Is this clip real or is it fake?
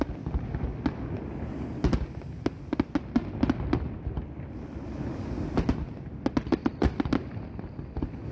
real